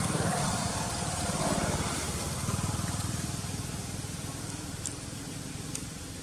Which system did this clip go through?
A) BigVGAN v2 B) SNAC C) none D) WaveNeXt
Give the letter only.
C